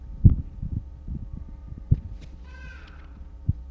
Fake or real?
fake